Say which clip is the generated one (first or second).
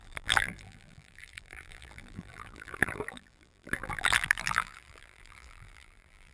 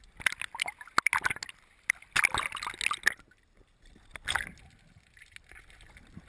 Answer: first